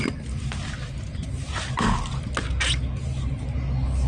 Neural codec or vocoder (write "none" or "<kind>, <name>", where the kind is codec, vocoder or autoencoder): none